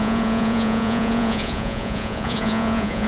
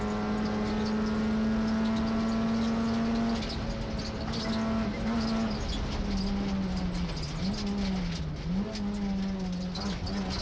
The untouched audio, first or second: second